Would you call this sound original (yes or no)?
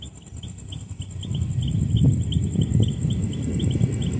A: yes